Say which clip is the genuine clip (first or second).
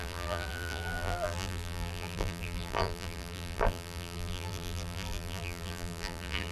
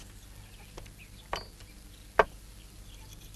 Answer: second